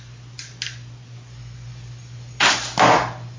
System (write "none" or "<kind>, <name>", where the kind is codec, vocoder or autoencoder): none